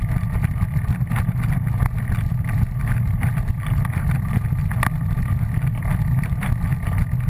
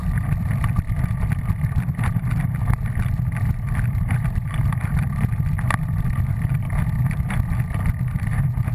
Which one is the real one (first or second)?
first